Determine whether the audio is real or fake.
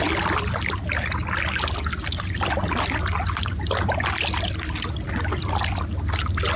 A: real